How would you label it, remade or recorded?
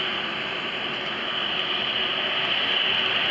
recorded